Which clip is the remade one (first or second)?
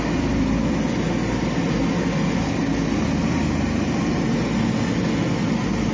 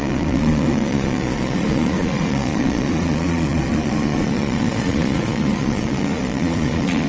second